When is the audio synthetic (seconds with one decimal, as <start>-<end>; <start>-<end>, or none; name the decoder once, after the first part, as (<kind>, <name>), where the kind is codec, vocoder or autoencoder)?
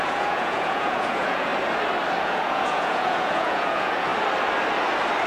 0.0-1.5 (vocoder, Vocos); 2.2-4.1